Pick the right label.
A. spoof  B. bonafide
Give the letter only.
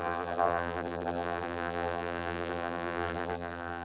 A